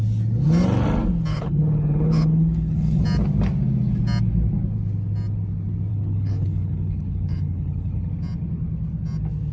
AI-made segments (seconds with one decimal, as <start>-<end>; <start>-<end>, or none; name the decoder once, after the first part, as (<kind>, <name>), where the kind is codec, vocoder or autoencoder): 1.3-3.0 (codec, HILCodec); 5.9-8.1